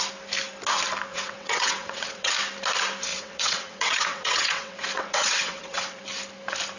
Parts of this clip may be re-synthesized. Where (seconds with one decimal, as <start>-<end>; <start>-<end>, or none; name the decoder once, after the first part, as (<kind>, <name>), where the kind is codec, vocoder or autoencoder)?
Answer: 1.1-2.3 (vocoder, WaveNeXt); 3.1-6.0